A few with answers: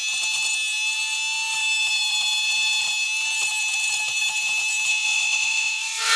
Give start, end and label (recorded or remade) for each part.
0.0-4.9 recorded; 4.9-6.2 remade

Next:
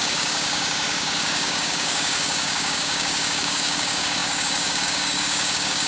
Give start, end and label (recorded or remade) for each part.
0.0-5.9 remade

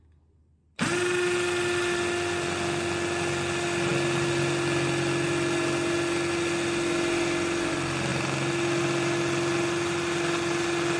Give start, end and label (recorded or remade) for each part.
0.0-11.0 recorded

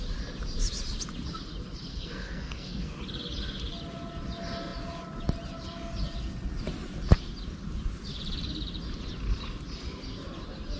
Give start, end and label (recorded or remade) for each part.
0.0-1.9 recorded; 1.9-3.0 remade; 3.0-10.8 recorded

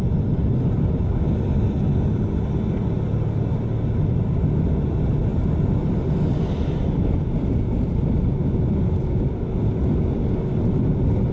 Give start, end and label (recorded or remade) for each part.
0.0-11.3 recorded

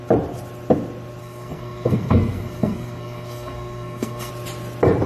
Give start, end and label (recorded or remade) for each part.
0.0-1.2 recorded; 1.2-4.3 remade; 4.3-5.1 recorded

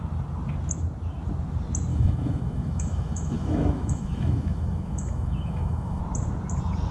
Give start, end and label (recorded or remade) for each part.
0.0-1.9 recorded; 1.9-6.0 remade; 6.0-6.9 recorded

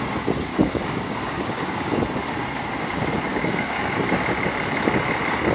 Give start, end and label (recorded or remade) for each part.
0.0-0.5 recorded; 0.5-1.9 remade; 1.9-3.3 recorded; 3.3-4.0 remade; 4.0-5.5 recorded